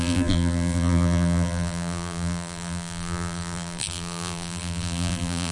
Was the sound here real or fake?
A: fake